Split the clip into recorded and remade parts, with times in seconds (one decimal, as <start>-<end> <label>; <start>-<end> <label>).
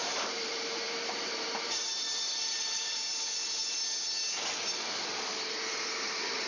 0.0-3.1 remade; 3.1-5.6 recorded; 5.6-6.5 remade